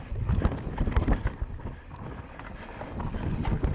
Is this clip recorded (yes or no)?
yes